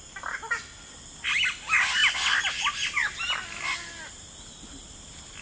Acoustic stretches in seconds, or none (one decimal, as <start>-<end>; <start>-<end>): 0.0-5.4